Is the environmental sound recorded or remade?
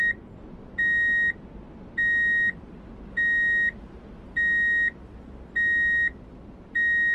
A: recorded